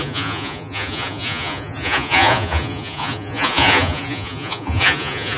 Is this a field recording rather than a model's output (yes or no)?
no